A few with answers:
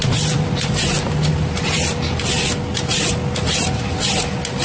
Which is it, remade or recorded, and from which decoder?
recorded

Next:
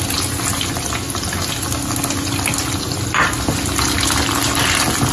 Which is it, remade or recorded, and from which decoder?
recorded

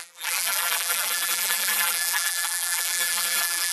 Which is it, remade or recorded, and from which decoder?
remade, vocoder, BigVGAN v2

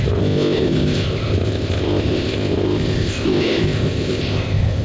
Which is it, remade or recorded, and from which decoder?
remade, codec, ZipCodec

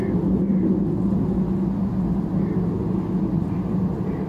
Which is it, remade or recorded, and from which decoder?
recorded